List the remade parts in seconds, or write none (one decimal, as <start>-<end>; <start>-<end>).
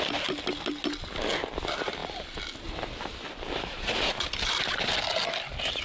none